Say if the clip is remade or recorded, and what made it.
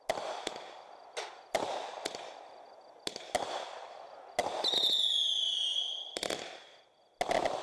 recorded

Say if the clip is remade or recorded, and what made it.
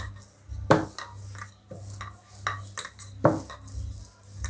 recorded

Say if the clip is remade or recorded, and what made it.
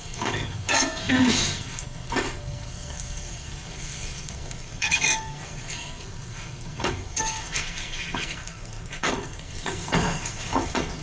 remade, codec, SNAC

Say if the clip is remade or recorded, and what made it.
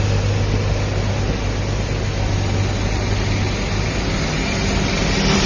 recorded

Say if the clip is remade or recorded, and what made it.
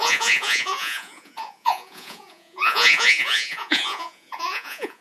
remade, vocoder, Vocos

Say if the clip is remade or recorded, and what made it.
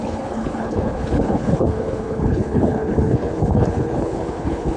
remade, codec, HILCodec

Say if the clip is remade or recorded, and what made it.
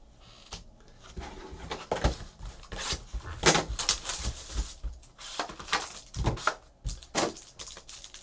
recorded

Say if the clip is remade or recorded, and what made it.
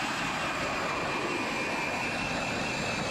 recorded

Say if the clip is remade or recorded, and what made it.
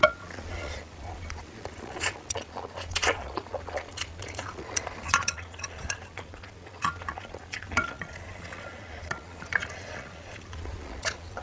remade, vocoder, Vocos